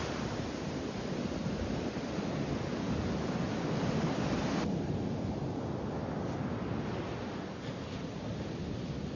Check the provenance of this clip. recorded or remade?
recorded